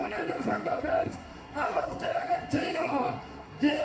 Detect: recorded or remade remade